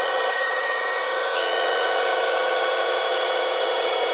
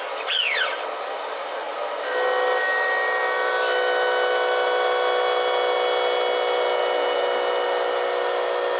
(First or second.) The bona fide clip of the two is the second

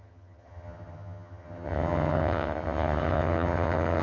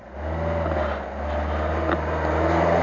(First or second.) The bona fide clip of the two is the second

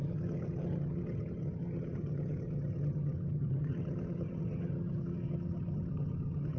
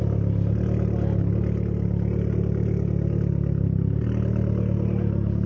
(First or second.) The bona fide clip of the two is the second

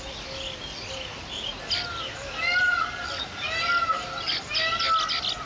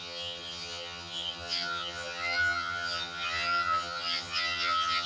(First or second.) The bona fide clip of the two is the first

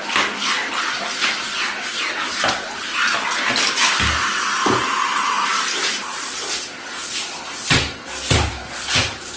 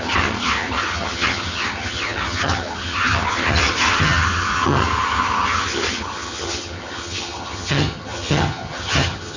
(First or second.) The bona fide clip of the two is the first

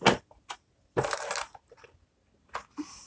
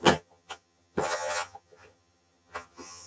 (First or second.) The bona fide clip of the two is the first